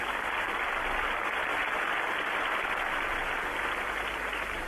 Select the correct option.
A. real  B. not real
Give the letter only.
A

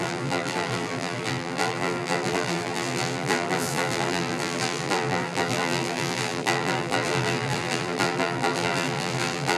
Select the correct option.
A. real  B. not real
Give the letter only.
B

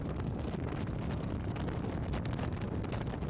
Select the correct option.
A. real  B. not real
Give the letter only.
A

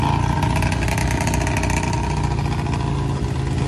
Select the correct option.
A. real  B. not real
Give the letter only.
A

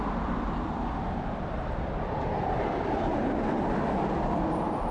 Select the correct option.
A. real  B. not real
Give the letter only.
B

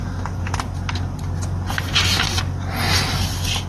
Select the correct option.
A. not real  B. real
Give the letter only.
B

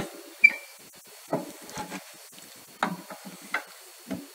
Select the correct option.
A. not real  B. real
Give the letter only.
B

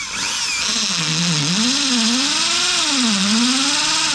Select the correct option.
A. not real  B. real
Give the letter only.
B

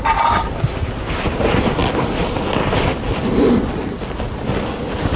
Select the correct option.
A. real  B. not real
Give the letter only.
A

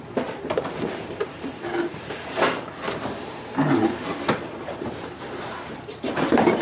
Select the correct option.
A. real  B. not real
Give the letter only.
B